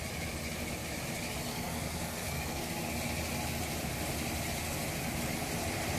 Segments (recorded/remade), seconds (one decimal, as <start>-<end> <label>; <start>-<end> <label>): 0.0-1.5 recorded; 1.5-2.7 remade; 2.7-6.0 recorded

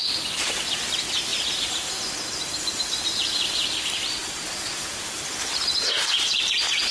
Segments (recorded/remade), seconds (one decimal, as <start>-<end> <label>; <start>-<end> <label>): 0.0-4.2 recorded; 4.2-4.8 remade; 4.8-6.9 recorded

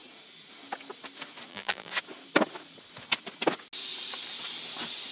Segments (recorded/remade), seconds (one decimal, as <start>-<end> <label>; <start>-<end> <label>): 0.0-1.5 recorded; 1.5-1.9 remade; 1.9-5.1 recorded